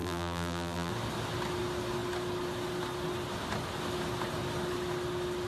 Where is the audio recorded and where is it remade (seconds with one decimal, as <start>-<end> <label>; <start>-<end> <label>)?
0.0-0.9 remade; 0.9-5.5 recorded